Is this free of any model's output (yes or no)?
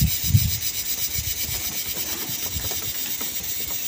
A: yes